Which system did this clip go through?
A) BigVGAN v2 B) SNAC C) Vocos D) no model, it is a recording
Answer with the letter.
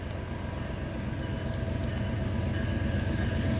D